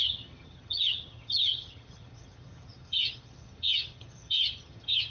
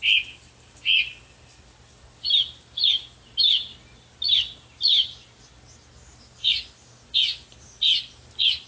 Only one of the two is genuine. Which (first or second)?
second